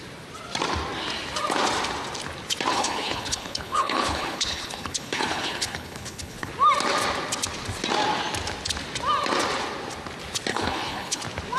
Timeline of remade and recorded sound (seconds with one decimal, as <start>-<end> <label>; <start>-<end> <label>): 0.0-2.7 recorded; 2.7-6.5 remade; 6.5-10.5 recorded; 10.5-11.2 remade; 11.2-11.6 recorded